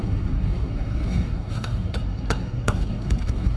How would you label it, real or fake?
fake